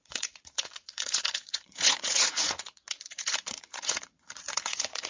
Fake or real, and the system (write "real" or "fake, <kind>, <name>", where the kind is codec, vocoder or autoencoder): fake, vocoder, Vocos